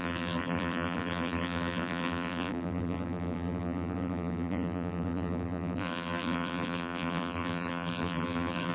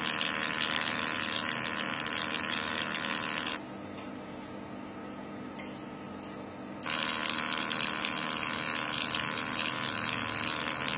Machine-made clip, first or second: first